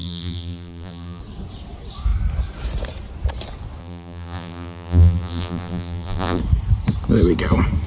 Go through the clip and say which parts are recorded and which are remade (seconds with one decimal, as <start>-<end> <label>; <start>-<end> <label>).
0.0-1.2 remade; 1.2-3.8 recorded; 3.8-6.4 remade; 6.4-7.9 recorded